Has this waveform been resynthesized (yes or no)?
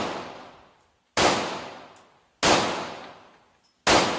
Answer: no